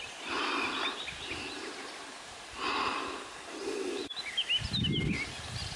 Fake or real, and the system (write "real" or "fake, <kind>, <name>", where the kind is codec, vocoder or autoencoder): real